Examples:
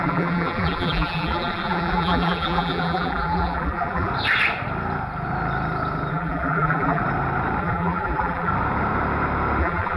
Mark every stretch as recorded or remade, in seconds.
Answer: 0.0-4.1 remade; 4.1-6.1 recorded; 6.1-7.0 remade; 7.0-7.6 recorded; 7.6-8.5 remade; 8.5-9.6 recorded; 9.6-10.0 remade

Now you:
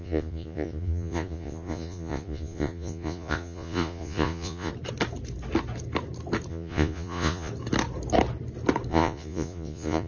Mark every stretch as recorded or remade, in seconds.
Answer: 0.0-4.7 remade; 4.7-6.5 recorded; 6.5-7.5 remade; 7.5-8.9 recorded; 8.9-10.1 remade

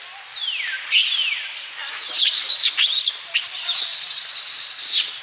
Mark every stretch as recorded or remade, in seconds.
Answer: 0.0-1.8 recorded; 1.8-5.2 remade

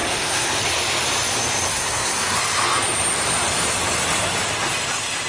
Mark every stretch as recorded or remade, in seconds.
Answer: 0.0-0.6 remade; 0.6-1.7 recorded; 1.7-2.4 remade; 2.4-5.3 recorded

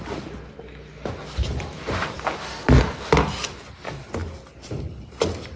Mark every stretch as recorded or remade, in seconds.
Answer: 0.0-5.6 recorded

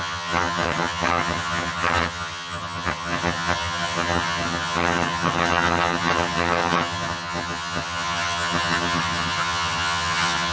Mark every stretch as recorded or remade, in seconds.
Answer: 0.0-10.5 remade